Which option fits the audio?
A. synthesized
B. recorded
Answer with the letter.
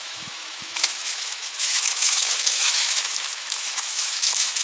A